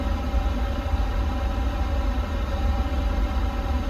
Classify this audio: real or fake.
real